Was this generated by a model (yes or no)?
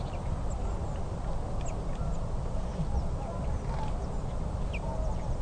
no